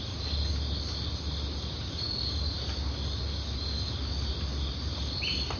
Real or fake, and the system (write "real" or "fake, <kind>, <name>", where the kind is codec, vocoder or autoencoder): real